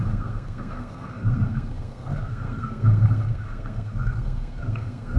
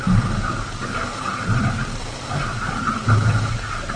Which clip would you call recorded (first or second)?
second